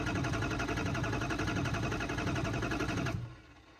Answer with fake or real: real